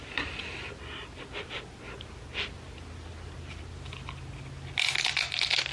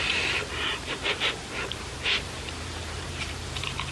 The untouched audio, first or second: first